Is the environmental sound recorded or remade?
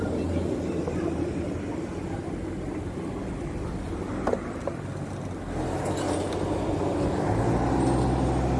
recorded